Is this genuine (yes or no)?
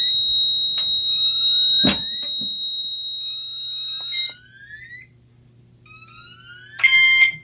yes